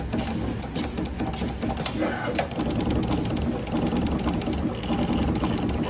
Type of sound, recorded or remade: recorded